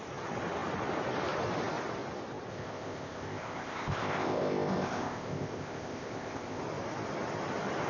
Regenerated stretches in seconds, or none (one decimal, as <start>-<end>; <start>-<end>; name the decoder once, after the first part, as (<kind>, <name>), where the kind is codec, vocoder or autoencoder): 2.5-6.6 (codec, ZipCodec)